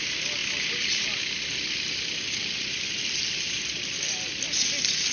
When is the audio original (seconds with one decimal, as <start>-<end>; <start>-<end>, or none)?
0.0-5.1